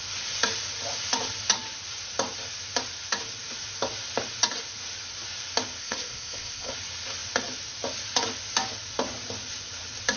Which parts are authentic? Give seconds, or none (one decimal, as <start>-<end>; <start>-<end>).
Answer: 0.0-5.8; 6.7-10.2